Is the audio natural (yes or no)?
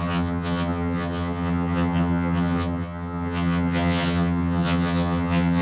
no